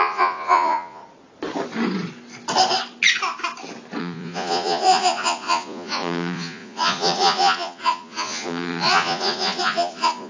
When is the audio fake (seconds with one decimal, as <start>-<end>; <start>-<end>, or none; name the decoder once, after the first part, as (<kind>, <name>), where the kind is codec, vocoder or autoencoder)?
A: 0.0-1.0 (vocoder, Vocos); 4.0-10.3